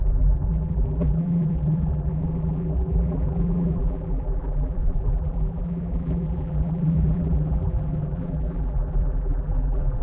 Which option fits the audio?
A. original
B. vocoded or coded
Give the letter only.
B